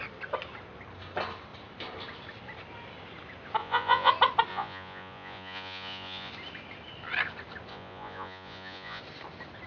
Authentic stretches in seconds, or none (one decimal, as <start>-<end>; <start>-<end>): 0.0-3.6; 4.1-4.5; 6.3-7.7; 9.0-9.7